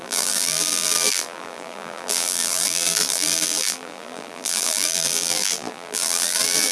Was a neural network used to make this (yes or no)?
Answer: yes